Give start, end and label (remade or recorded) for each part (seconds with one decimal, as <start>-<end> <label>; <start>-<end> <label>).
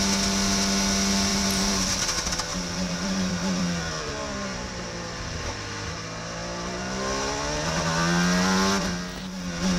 0.0-1.3 recorded; 1.3-2.0 remade; 2.0-2.5 recorded; 2.5-5.5 remade; 5.5-9.8 recorded